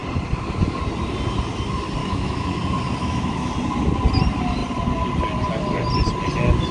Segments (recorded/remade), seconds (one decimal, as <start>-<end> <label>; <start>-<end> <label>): 0.0-2.0 recorded; 2.0-2.6 remade; 2.6-3.0 recorded; 3.0-3.5 remade; 3.5-6.7 recorded